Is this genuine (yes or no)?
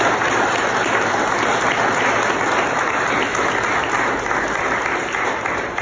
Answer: yes